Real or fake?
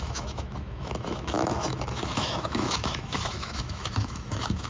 fake